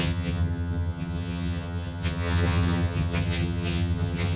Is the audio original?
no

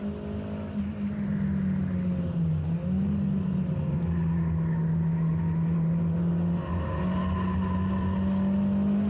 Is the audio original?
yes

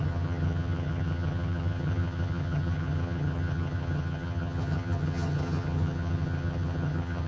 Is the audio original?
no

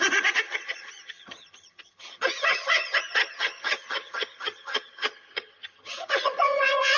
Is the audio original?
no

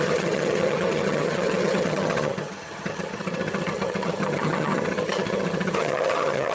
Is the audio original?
no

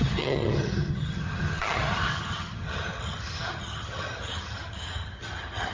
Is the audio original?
no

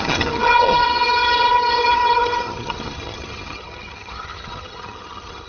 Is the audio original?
no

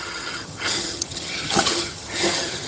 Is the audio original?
no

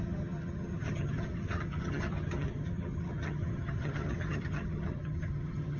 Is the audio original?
no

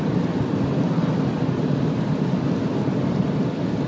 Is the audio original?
yes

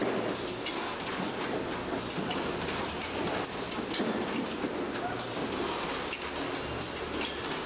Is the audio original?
yes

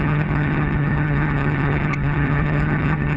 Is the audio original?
no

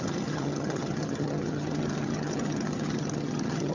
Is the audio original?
no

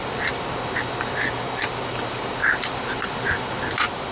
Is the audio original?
yes